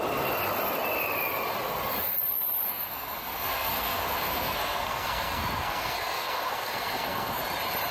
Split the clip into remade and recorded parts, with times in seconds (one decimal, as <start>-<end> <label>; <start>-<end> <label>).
0.0-2.7 recorded; 2.7-7.4 remade; 7.4-7.9 recorded

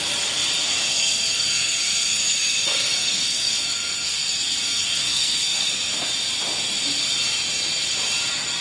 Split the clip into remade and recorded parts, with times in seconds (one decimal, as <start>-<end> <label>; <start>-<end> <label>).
0.0-0.9 recorded; 0.9-5.9 remade; 5.9-8.6 recorded

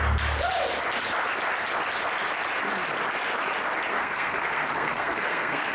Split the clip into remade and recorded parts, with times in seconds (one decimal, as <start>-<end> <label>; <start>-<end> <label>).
0.0-3.9 recorded; 3.9-5.7 remade

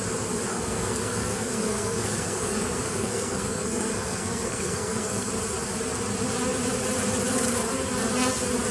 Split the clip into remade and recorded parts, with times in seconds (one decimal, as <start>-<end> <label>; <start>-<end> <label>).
0.0-0.5 recorded; 0.5-5.3 remade; 5.3-8.7 recorded

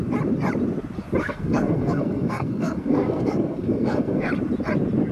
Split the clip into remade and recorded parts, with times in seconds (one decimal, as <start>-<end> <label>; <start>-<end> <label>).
0.0-1.2 recorded; 1.2-4.3 remade; 4.3-5.1 recorded

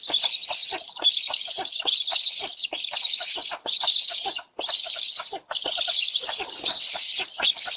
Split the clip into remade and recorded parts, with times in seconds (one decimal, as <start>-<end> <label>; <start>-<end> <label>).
0.0-7.8 recorded